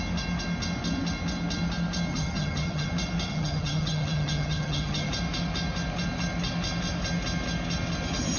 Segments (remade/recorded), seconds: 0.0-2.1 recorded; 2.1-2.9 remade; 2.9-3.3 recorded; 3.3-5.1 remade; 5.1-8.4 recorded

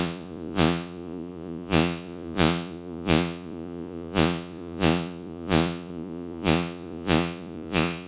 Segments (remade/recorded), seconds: 0.0-8.1 remade

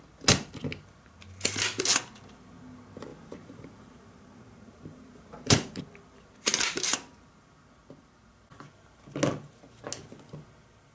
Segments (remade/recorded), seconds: 0.0-3.1 recorded; 3.1-5.8 remade; 5.8-10.9 recorded

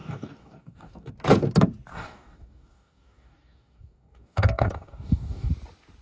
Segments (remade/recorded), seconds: 0.0-1.1 remade; 1.1-1.9 recorded; 1.9-5.5 remade; 5.5-6.0 recorded

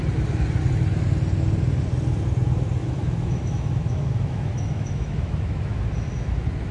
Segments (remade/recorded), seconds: 0.0-2.8 recorded; 2.8-6.3 remade; 6.3-6.7 recorded

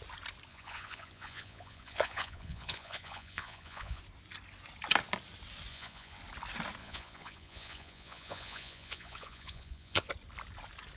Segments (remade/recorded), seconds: 0.0-0.5 recorded; 0.5-4.0 remade; 4.0-5.7 recorded; 5.7-6.2 remade; 6.2-6.8 recorded; 6.8-10.1 remade; 10.1-11.0 recorded